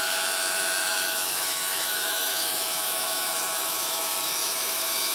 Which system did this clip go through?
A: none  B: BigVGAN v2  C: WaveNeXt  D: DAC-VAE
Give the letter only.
D